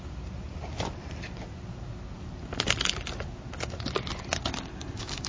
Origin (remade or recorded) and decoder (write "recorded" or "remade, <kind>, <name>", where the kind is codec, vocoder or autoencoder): recorded